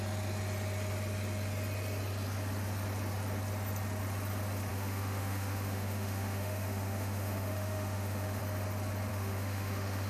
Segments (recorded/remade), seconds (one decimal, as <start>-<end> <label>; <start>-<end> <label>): 0.0-4.7 recorded; 4.7-8.4 remade; 8.4-9.1 recorded; 9.1-10.1 remade